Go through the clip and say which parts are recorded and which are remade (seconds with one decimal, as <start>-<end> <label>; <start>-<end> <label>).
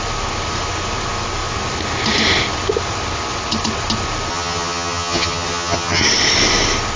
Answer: 0.0-4.3 recorded; 4.3-6.0 remade; 6.0-7.0 recorded